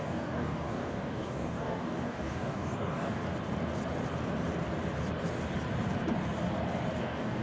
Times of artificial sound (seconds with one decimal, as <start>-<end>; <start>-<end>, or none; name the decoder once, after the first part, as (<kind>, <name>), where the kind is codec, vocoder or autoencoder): 0.0-3.2 (codec, DAC); 7.0-7.4